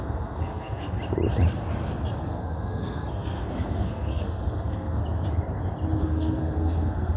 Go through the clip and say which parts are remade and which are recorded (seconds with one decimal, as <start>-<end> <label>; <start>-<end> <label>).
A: 0.0-1.0 remade; 1.0-2.2 recorded; 2.2-5.0 remade; 5.0-6.0 recorded; 6.0-7.2 remade